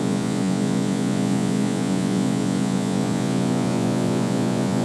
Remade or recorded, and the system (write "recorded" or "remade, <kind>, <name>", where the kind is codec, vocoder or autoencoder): remade, vocoder, Vocos